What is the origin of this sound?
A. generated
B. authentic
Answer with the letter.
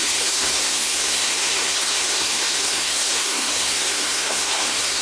A